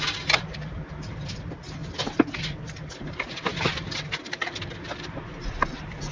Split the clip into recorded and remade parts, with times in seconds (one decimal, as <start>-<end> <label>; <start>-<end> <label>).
0.0-6.1 recorded